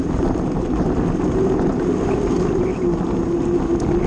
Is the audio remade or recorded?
recorded